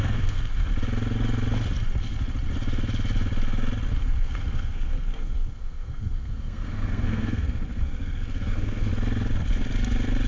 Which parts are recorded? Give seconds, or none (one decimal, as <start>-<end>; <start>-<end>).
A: 0.7-3.9; 8.9-10.3